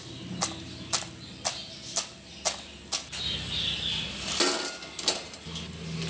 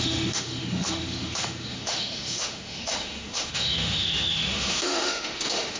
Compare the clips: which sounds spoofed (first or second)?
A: second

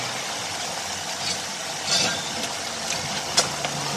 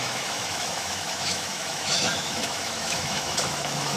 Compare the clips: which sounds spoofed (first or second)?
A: second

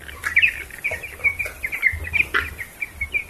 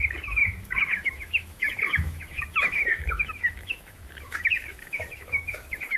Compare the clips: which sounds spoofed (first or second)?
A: second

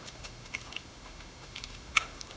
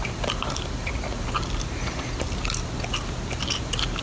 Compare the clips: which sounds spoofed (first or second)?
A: first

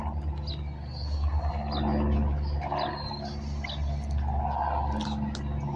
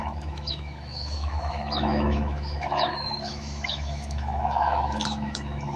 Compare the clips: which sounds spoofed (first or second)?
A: second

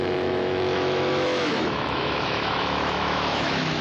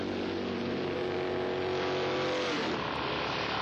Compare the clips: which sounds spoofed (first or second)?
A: first